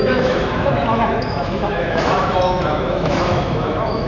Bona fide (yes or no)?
no